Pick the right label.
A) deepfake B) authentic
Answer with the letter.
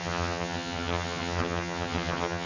A